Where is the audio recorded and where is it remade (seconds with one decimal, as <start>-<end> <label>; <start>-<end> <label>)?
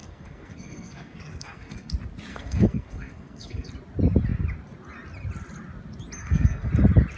0.0-1.9 remade; 1.9-2.3 recorded; 2.3-3.7 remade; 3.7-6.2 recorded; 6.2-6.7 remade; 6.7-7.2 recorded